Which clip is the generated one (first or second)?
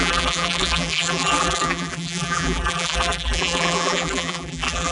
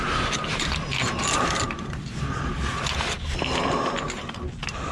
first